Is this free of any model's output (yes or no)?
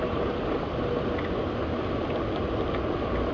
yes